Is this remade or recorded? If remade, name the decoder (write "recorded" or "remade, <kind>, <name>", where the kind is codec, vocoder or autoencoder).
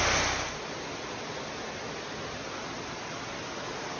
recorded